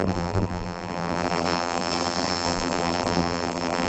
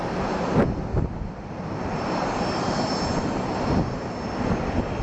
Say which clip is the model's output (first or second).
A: first